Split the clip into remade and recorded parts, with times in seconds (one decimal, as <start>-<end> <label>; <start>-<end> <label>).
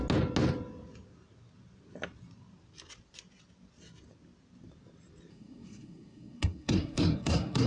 0.0-5.3 recorded; 5.3-7.7 remade